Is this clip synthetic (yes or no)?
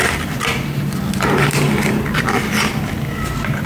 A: yes